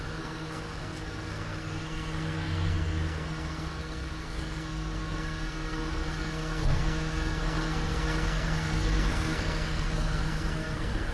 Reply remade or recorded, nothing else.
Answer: remade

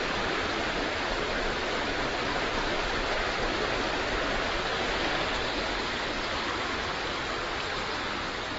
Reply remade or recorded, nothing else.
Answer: recorded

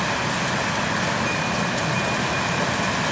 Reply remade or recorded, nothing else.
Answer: recorded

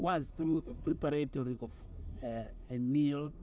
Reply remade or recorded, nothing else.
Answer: remade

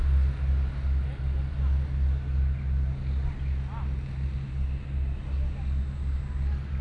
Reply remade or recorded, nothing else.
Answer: recorded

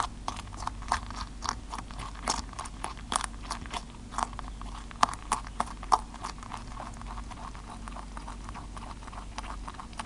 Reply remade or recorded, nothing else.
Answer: recorded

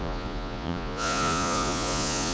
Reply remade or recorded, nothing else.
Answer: remade